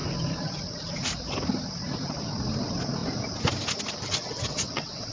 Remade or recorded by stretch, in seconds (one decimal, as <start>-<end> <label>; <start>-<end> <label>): 0.0-4.2 recorded; 4.2-5.1 remade